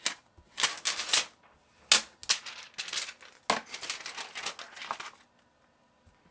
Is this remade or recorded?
recorded